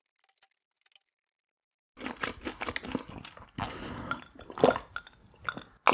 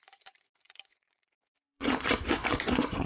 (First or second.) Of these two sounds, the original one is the first